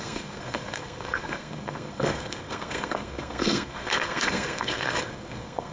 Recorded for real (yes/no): no